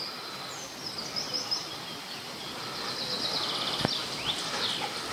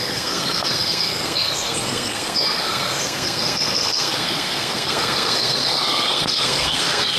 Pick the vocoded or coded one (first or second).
second